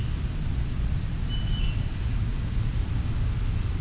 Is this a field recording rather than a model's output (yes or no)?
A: yes